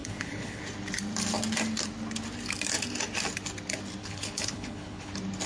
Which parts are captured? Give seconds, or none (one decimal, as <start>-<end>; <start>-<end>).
0.6-4.0; 5.1-5.5